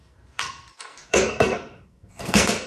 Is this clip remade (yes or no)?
yes